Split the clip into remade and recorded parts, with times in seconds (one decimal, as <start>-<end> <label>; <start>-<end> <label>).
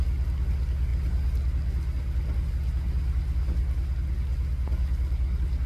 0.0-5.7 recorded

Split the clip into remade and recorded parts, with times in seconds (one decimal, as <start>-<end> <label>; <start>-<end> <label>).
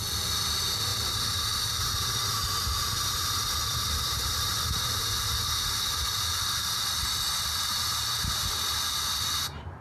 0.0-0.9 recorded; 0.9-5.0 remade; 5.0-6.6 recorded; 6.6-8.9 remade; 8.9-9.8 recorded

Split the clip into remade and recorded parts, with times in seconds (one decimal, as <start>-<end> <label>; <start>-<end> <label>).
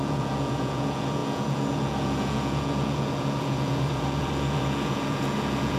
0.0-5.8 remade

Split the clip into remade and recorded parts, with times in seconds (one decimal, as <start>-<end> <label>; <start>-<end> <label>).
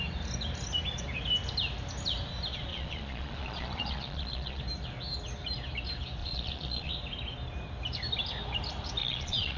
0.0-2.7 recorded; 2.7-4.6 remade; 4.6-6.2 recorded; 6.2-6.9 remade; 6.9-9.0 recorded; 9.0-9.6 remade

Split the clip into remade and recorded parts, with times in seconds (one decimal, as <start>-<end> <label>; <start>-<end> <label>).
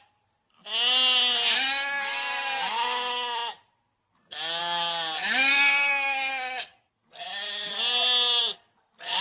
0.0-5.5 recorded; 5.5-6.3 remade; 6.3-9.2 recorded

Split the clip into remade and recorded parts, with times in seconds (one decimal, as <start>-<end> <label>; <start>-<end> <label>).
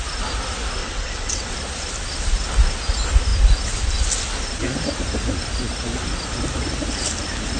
0.0-0.8 recorded; 0.8-1.5 remade; 1.5-7.6 recorded